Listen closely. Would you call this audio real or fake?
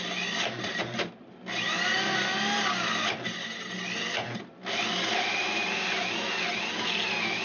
real